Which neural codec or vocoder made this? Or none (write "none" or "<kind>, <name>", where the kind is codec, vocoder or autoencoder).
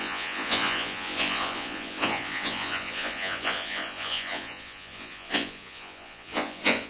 vocoder, Vocos